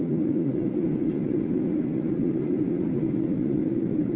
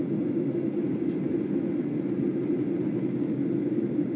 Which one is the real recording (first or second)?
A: second